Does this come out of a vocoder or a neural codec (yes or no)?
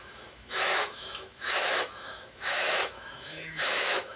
yes